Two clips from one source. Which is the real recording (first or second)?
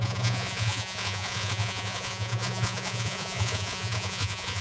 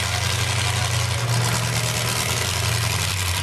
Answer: second